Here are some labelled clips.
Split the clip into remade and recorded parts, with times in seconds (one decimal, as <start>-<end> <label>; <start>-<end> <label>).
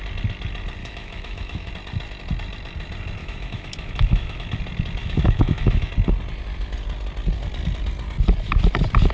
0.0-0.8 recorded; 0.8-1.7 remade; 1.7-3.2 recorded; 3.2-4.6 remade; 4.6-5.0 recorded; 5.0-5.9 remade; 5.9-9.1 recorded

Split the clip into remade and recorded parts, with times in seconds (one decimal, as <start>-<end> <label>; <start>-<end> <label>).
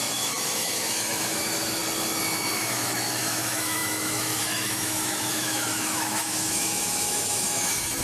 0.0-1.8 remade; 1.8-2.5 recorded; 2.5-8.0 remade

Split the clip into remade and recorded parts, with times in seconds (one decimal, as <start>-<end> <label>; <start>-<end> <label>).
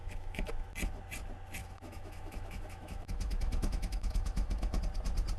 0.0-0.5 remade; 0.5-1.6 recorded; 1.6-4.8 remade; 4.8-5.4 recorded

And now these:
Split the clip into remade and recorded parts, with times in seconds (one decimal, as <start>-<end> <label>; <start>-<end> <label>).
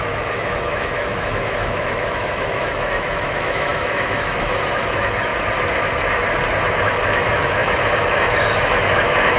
0.0-5.3 remade; 5.3-6.7 recorded; 6.7-9.4 remade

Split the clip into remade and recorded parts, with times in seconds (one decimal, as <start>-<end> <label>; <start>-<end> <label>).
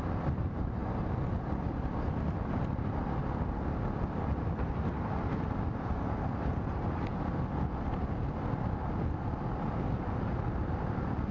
0.0-11.3 recorded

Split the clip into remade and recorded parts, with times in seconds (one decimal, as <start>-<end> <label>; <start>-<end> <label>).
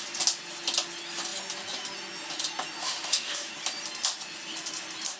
0.0-2.8 recorded; 2.8-3.5 remade; 3.5-5.2 recorded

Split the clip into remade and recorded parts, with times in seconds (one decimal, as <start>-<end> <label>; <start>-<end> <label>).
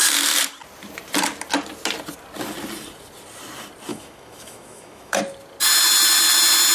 0.0-3.9 recorded; 3.9-5.2 remade; 5.2-6.7 recorded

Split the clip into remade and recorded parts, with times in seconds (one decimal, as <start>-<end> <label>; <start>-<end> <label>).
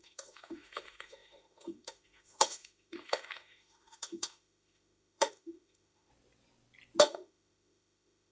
0.0-6.1 remade; 6.1-7.0 recorded; 7.0-8.3 remade